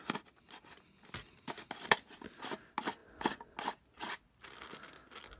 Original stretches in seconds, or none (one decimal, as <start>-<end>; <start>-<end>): 0.0-5.4